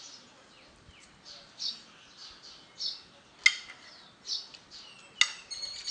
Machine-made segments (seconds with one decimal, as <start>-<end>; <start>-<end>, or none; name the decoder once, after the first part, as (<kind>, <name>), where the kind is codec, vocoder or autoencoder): none